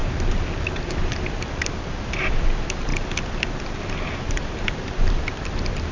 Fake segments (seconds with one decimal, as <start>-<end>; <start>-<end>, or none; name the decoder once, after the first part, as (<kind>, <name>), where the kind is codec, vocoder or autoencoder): 0.0-5.9 (vocoder, BigVGAN v2)